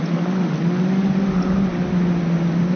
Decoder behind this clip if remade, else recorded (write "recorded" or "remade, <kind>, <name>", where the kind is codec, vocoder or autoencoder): recorded